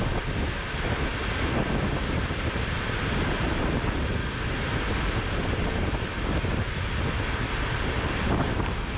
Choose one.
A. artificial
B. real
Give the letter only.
B